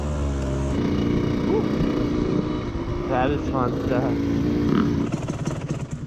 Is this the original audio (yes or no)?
yes